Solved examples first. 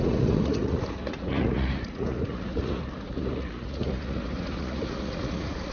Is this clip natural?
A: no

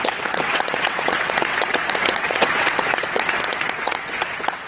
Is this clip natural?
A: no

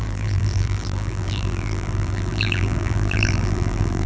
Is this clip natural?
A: no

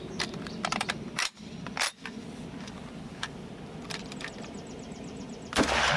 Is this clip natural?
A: no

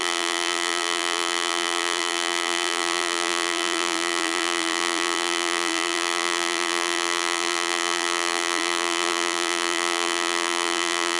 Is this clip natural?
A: no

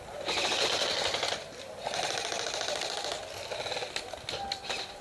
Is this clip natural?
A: yes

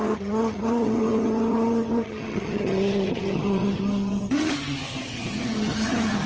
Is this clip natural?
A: no